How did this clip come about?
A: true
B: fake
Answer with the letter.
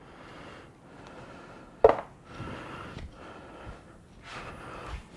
A